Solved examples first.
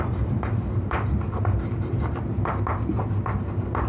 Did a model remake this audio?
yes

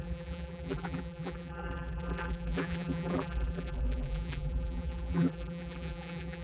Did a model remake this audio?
yes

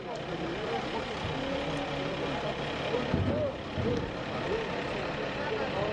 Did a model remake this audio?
no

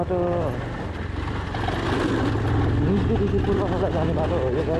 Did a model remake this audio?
no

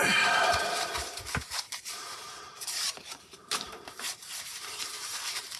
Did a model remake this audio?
yes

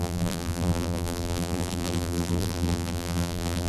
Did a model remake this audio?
yes